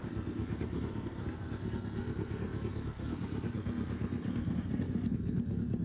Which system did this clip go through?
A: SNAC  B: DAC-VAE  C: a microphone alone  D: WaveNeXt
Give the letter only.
A